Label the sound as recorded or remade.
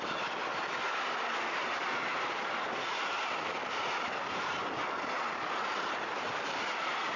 recorded